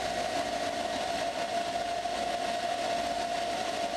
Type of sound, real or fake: real